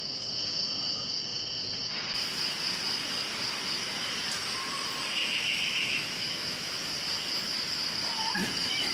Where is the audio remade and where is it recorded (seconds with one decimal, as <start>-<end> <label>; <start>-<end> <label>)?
0.0-5.2 recorded; 5.2-6.7 remade; 6.7-8.9 recorded